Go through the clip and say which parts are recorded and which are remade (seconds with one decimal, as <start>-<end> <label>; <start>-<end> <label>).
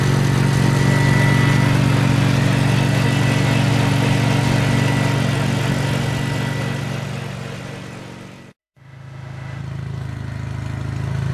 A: 0.0-8.6 recorded; 8.6-9.6 remade; 9.6-11.3 recorded